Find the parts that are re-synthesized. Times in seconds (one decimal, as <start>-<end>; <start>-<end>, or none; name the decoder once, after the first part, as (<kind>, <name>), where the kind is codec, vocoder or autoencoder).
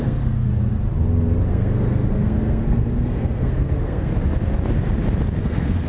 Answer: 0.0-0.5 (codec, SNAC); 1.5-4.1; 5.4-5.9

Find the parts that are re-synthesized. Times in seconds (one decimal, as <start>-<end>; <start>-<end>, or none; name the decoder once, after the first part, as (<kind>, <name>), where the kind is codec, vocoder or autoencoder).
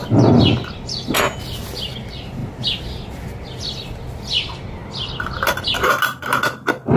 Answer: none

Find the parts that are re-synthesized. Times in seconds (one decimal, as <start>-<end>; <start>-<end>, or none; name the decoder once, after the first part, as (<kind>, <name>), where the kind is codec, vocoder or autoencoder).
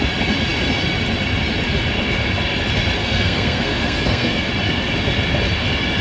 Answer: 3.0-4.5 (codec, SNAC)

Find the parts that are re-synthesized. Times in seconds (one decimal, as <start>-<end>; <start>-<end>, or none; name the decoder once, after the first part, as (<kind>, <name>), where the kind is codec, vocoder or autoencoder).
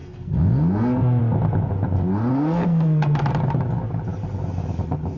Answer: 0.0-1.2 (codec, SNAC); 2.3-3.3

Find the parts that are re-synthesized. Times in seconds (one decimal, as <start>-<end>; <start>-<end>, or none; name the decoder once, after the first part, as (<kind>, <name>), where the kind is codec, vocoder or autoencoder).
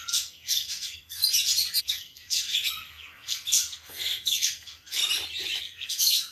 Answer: 0.0-1.2 (codec, SNAC); 1.8-5.0; 5.6-6.3